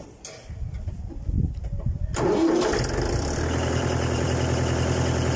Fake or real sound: fake